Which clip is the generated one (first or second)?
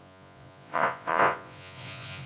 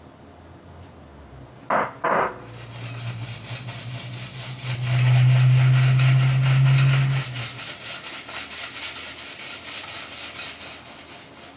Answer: first